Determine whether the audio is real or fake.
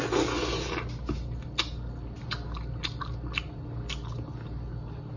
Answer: real